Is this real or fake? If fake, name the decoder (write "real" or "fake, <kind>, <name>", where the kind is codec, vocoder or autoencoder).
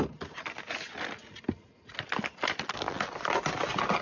real